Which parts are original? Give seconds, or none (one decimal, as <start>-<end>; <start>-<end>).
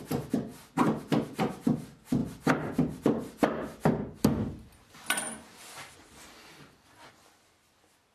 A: 0.0-8.1